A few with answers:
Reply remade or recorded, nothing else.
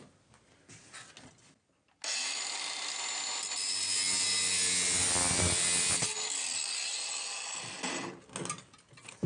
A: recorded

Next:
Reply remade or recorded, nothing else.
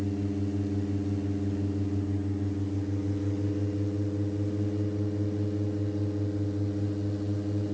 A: recorded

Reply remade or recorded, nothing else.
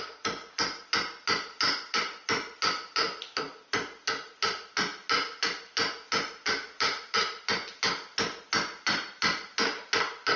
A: recorded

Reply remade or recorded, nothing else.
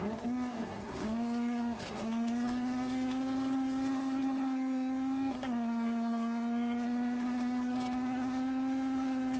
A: remade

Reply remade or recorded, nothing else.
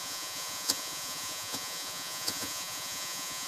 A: remade